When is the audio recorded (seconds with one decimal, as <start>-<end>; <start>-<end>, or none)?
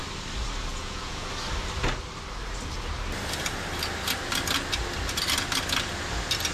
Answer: 0.0-0.7; 1.3-6.5